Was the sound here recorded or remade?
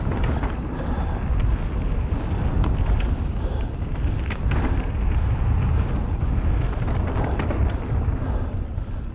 recorded